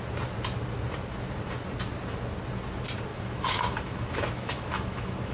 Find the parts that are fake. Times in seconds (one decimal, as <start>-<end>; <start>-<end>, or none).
3.1-5.3